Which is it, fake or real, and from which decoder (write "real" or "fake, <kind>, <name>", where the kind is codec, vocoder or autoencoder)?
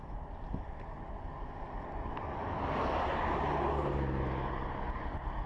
real